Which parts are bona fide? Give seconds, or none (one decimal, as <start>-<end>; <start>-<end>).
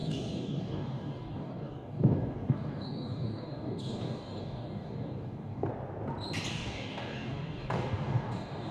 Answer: 5.7-6.5